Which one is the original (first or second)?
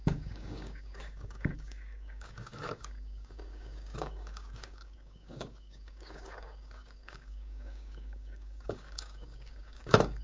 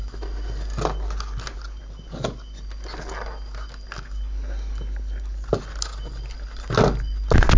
second